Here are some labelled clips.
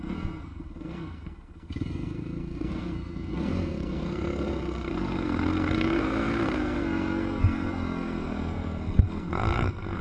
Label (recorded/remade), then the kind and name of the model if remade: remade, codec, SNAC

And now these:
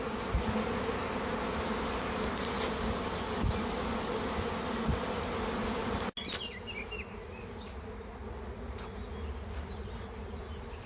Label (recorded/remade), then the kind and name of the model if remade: recorded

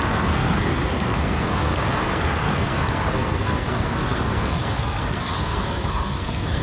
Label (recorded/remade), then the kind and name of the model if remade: remade, codec, SNAC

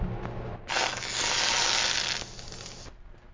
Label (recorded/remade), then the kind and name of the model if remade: recorded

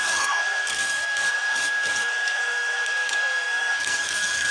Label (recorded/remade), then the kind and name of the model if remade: remade, codec, SNAC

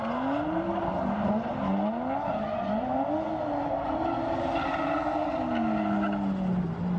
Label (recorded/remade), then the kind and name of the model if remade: recorded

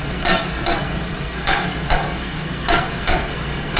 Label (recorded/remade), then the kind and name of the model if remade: remade, codec, SNAC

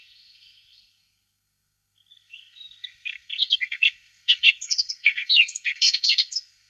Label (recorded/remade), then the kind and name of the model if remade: remade, codec, SNAC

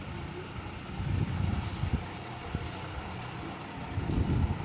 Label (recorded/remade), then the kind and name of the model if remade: recorded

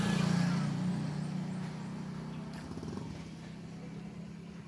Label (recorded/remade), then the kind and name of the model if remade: recorded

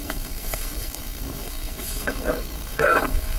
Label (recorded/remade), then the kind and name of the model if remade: remade, codec, SNAC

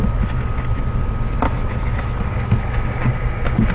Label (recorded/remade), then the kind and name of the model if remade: recorded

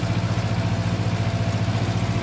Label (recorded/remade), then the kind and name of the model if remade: recorded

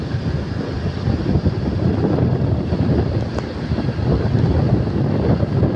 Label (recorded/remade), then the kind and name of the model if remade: recorded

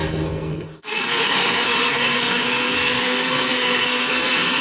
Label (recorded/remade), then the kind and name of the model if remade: remade, codec, SNAC